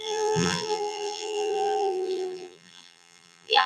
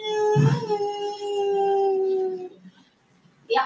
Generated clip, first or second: first